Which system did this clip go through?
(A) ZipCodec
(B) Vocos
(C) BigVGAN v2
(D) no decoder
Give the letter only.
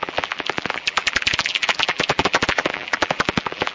C